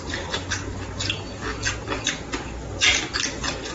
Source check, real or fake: real